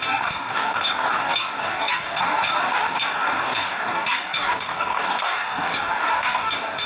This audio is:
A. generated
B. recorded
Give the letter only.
A